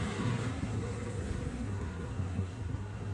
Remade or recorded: remade